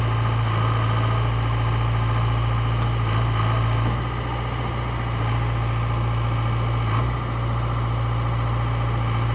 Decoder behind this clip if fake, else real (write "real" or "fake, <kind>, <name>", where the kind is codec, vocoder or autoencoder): real